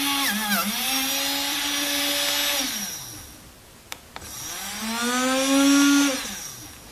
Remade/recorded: recorded